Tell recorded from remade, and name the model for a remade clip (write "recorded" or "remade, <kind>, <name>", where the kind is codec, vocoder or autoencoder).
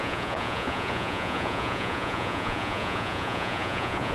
remade, vocoder, Vocos